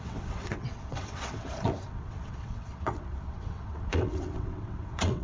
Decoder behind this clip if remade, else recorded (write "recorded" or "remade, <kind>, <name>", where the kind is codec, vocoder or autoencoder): remade, vocoder, WaveNeXt